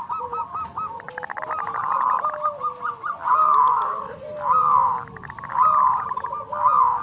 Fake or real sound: real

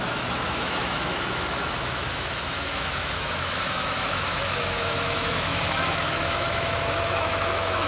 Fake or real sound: fake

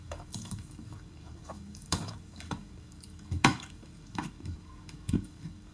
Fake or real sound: fake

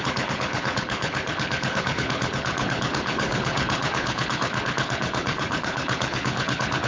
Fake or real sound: fake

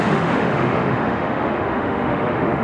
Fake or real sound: fake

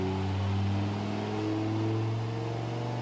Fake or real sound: real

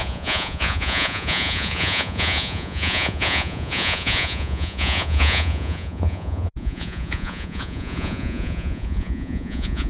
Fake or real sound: fake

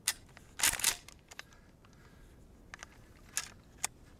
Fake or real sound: real